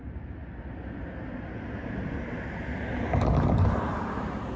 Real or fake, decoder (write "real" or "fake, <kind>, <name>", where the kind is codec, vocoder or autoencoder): real